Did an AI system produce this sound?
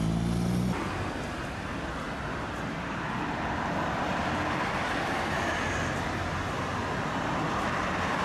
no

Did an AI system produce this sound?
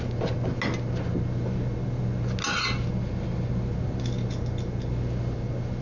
no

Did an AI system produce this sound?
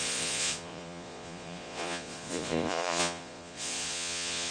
yes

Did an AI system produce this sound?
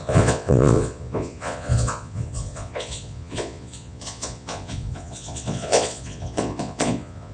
yes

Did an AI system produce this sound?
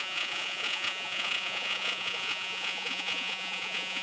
yes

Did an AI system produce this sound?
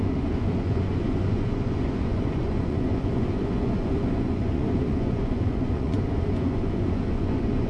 yes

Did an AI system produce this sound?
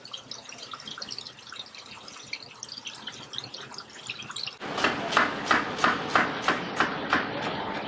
no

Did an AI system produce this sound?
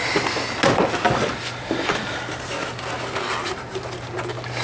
no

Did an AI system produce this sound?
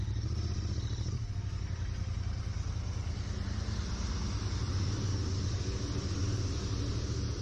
no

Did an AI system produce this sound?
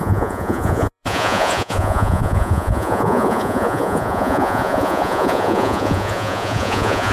yes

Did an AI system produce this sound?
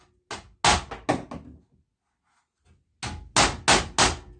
no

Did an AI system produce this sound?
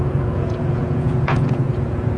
yes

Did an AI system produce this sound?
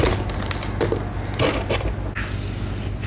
no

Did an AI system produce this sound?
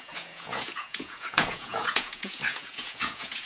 yes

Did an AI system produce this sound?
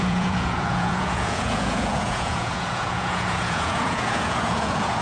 yes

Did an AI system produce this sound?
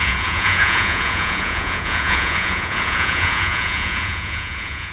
yes